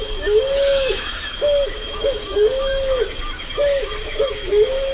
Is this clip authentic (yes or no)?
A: no